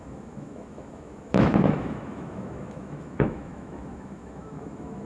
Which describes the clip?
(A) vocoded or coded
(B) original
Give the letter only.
A